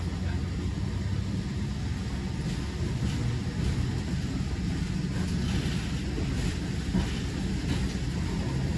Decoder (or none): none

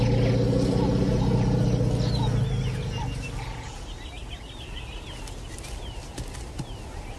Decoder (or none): none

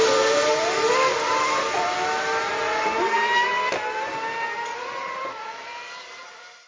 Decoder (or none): none